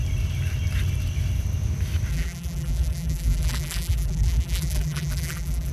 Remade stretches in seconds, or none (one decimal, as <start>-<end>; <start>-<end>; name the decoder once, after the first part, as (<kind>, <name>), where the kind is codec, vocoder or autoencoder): 2.1-5.7 (vocoder, BigVGAN v2)